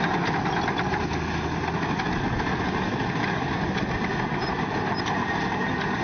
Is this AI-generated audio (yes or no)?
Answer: no